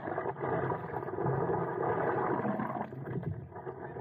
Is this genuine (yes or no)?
yes